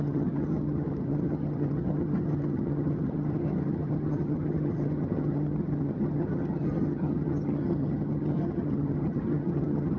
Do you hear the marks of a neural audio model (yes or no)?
yes